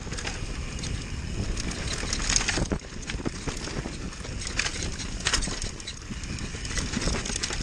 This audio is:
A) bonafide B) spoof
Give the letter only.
A